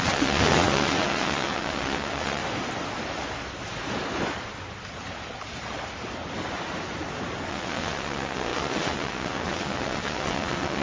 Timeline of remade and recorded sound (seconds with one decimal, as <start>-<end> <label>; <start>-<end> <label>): 0.0-2.4 remade; 2.4-7.5 recorded; 7.5-10.8 remade

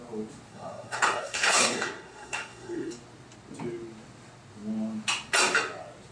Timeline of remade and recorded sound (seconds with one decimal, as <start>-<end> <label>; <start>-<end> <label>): 0.0-0.5 recorded; 0.5-2.9 remade; 2.9-6.1 recorded

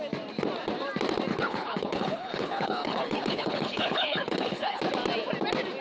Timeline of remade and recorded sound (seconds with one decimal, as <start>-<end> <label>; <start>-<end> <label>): 0.0-1.3 recorded; 1.3-4.8 remade; 4.8-5.8 recorded